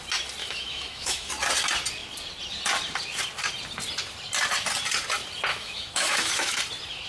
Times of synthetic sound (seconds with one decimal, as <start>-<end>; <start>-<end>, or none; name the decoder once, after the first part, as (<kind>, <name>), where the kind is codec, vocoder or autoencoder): 0.4-1.3 (autoencoder, DAC-VAE); 5.5-6.6

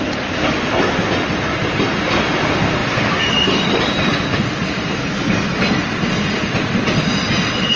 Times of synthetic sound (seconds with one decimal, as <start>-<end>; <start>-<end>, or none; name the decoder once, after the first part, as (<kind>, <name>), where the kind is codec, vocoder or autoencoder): none

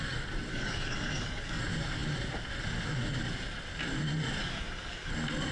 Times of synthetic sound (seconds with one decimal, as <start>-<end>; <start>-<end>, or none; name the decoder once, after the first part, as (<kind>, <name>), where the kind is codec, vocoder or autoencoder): 0.5-1.6 (codec, DAC); 4.4-5.1